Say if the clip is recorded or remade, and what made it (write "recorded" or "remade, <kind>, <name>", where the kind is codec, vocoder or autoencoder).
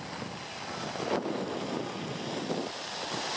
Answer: recorded